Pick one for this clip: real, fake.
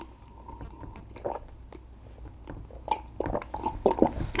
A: real